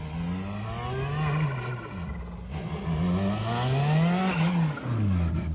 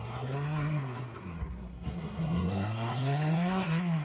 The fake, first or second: second